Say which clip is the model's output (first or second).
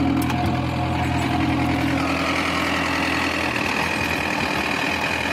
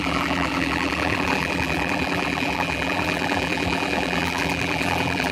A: second